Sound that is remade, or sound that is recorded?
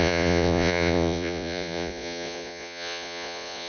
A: remade